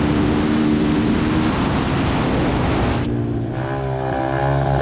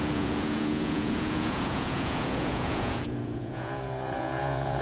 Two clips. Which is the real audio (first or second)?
first